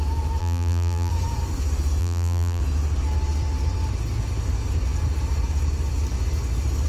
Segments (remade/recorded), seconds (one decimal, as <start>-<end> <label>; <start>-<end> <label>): 0.0-0.4 recorded; 0.4-1.1 remade; 1.1-2.0 recorded; 2.0-2.6 remade; 2.6-6.9 recorded